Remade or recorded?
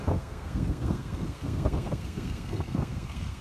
remade